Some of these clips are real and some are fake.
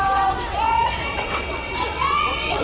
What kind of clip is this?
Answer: fake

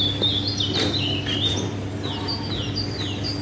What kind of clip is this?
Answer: real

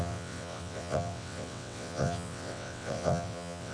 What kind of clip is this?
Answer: fake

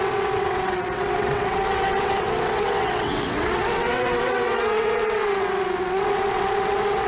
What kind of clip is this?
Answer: fake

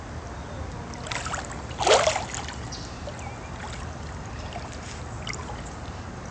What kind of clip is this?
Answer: real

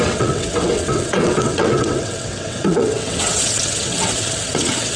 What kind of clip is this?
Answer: fake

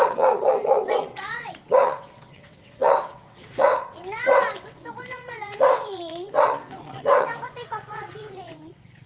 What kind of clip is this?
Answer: fake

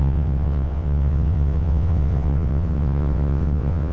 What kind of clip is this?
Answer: fake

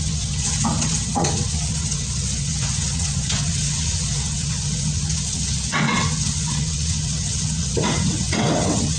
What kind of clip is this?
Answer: fake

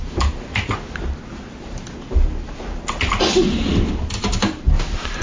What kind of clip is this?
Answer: real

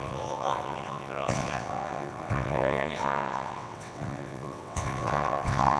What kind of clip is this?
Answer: fake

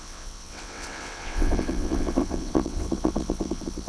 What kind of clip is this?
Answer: fake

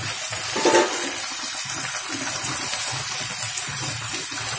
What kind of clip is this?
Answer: real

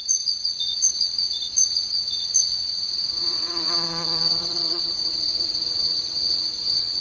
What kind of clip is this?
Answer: fake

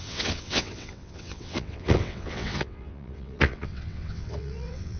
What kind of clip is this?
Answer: fake